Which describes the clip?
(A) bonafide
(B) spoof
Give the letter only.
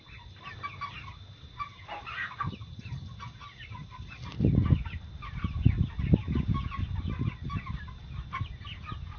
A